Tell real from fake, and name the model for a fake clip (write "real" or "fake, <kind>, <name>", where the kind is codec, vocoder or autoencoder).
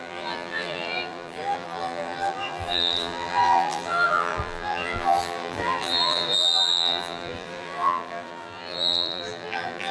fake, vocoder, BigVGAN v2